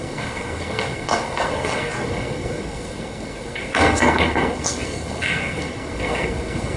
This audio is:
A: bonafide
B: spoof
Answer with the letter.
B